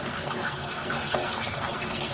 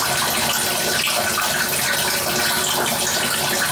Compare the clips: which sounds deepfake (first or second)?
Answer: first